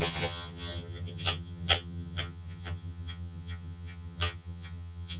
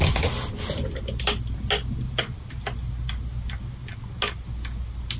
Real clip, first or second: second